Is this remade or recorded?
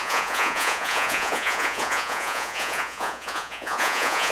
remade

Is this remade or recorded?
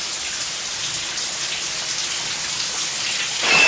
recorded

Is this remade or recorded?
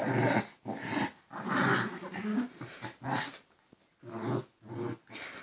recorded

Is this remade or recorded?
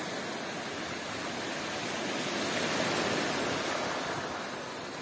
recorded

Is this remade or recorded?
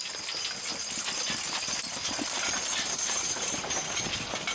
recorded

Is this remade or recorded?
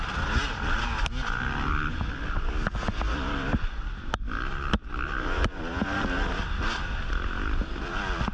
recorded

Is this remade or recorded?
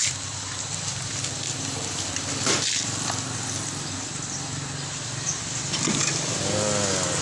recorded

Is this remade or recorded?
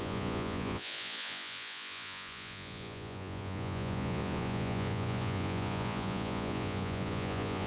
remade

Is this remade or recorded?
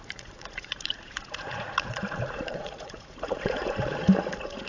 remade